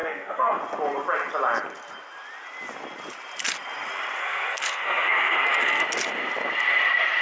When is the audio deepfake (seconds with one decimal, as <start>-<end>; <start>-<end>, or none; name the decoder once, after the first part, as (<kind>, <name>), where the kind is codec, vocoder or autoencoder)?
0.0-0.6 (codec, SNAC); 4.2-5.8